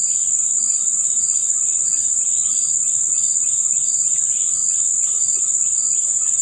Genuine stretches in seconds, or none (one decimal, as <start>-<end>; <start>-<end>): 0.0-6.4